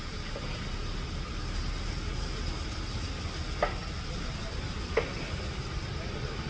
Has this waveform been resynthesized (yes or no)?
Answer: no